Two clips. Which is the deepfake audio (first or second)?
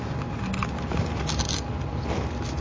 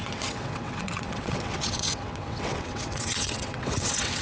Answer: second